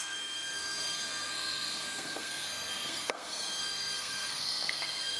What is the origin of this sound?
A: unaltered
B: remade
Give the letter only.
B